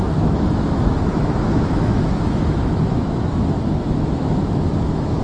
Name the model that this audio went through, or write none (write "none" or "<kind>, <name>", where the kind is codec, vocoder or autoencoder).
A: autoencoder, DAC-VAE